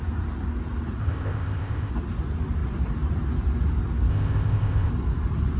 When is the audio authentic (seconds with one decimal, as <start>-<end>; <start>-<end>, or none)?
0.0-1.0; 1.9-4.1; 4.9-5.6